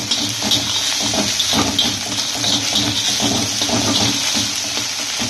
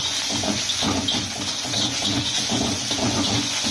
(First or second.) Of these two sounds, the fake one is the second